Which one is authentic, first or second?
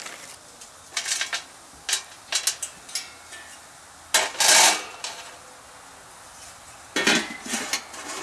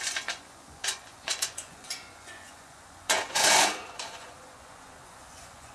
first